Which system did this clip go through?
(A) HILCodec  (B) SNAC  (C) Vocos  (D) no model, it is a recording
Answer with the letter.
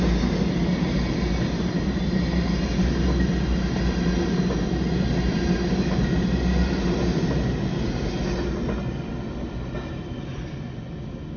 D